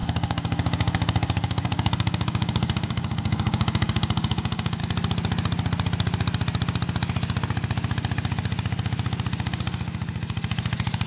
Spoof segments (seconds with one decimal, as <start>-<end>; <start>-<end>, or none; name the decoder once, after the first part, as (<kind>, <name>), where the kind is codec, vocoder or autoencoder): 0.0-4.8 (codec, DAC)